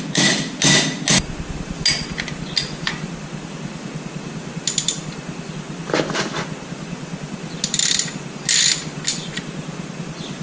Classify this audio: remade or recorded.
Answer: recorded